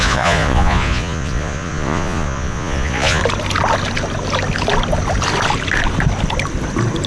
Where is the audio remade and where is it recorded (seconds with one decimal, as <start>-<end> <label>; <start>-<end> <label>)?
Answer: 0.0-3.2 remade; 3.2-7.1 recorded